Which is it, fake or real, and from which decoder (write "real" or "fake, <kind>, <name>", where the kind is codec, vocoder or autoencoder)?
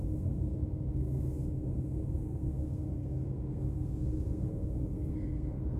fake, codec, SNAC